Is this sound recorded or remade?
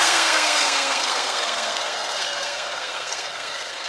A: remade